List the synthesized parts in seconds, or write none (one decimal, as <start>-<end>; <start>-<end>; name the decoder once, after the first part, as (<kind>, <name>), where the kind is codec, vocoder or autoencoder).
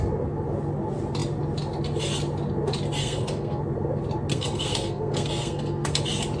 3.0-3.6 (codec, SNAC); 4.3-6.0